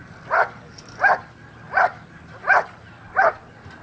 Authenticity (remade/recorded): recorded